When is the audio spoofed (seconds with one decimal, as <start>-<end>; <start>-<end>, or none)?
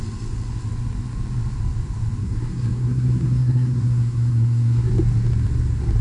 2.2-4.9